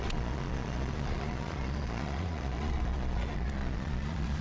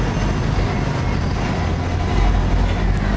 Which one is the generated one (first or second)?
first